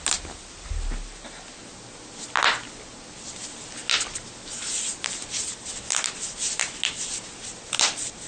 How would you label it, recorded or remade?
recorded